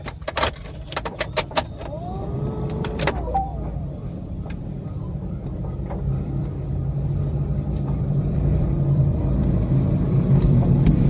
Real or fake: fake